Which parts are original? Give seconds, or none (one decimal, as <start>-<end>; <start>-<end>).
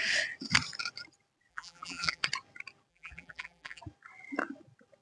0.0-1.5; 2.2-2.9; 3.8-5.0